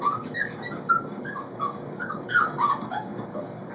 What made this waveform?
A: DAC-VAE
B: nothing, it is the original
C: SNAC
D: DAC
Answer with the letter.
D